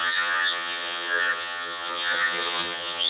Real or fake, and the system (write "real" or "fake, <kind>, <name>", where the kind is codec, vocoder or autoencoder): fake, vocoder, HiFi-GAN